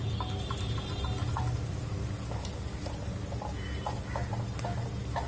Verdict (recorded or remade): recorded